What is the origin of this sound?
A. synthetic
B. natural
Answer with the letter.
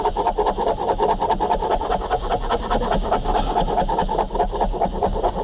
B